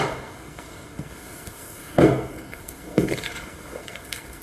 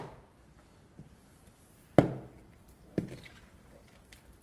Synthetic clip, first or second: first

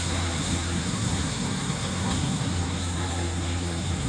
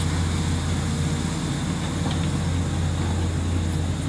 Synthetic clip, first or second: first